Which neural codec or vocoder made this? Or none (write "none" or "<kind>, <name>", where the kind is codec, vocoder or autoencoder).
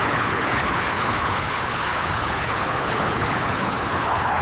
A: codec, HILCodec